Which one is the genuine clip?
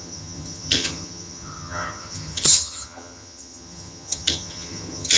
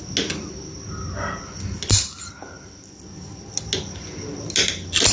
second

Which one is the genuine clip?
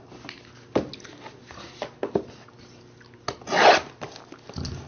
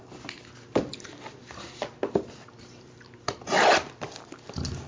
first